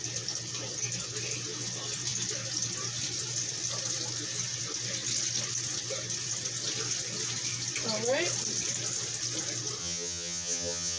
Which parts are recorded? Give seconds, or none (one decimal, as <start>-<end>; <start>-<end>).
0.0-9.8